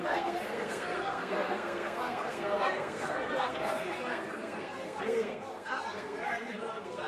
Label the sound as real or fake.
fake